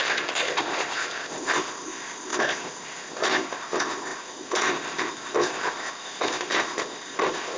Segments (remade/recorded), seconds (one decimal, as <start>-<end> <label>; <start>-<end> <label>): 0.0-7.6 remade